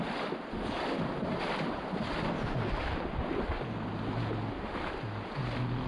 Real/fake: real